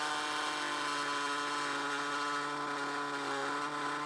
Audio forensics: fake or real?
real